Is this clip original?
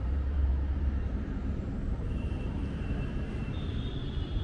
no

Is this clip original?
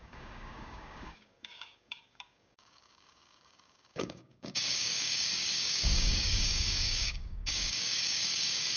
no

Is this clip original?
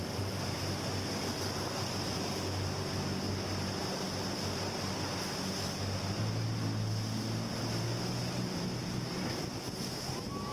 yes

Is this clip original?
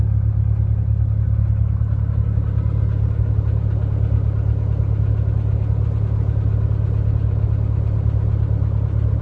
yes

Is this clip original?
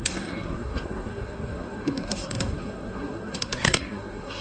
no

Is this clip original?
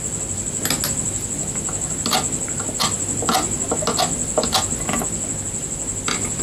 yes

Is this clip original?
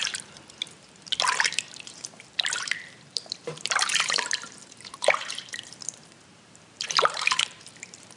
no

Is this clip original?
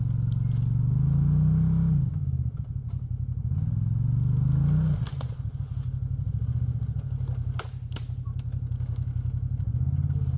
yes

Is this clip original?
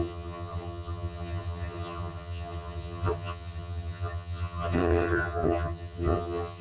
no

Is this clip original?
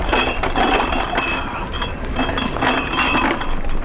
yes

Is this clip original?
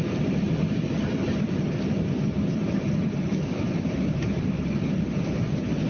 yes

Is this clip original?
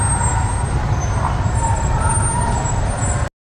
yes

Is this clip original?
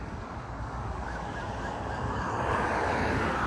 no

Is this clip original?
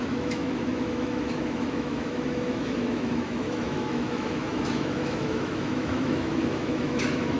no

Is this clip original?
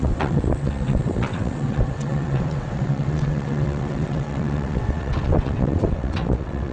no